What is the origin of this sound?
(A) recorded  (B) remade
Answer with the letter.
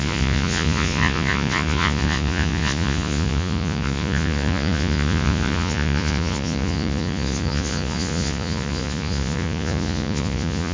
B